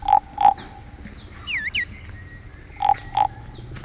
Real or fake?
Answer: real